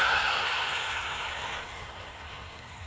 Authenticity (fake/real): fake